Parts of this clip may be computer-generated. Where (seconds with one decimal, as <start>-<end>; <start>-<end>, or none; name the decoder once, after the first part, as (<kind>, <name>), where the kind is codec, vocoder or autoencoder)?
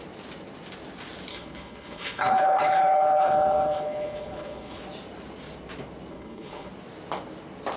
1.3-4.8 (codec, HILCodec); 6.1-6.7